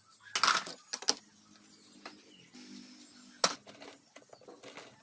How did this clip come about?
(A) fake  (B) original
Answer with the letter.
B